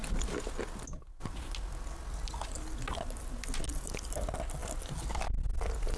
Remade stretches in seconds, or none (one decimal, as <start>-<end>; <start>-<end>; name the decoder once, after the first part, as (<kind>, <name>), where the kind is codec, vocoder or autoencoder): none